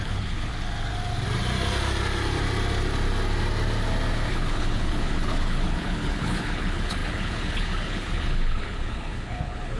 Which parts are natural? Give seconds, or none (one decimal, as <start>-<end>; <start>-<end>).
0.5-4.3